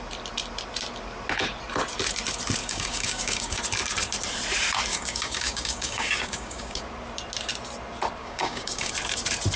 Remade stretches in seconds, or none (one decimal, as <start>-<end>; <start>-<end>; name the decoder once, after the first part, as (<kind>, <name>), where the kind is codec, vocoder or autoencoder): 2.6-3.6 (codec, DAC); 4.9-6.8; 8.2-8.9